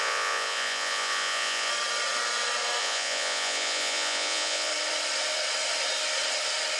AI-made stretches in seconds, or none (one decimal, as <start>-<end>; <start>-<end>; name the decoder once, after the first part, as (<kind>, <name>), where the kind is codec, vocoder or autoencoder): 0.0-1.7 (vocoder, Vocos); 2.8-4.7